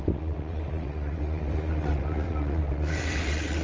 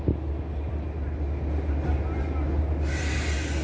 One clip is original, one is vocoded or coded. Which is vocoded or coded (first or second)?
first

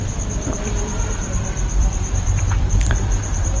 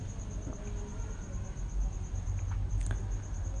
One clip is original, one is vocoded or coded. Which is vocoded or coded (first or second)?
first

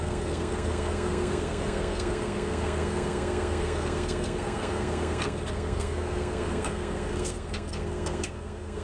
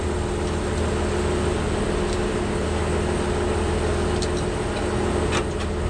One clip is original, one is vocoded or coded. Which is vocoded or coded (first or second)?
first